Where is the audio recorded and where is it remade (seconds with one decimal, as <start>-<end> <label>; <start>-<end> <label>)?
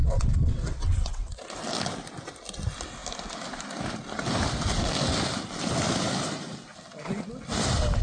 0.0-1.4 remade; 1.4-8.0 recorded